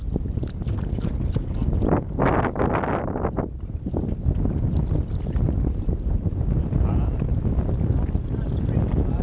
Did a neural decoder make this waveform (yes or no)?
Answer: no